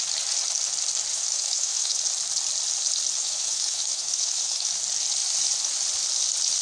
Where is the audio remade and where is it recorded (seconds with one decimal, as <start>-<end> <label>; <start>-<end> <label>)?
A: 0.0-1.1 recorded; 1.1-2.0 remade; 2.0-3.2 recorded; 3.2-4.7 remade; 4.7-6.6 recorded